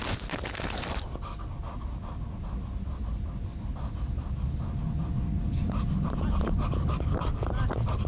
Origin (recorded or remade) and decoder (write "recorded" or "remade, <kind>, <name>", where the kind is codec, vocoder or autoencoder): recorded